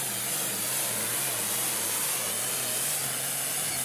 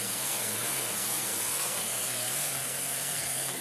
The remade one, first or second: second